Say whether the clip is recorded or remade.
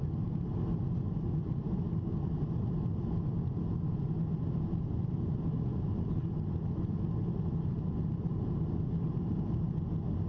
recorded